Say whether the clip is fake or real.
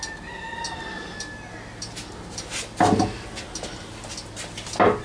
real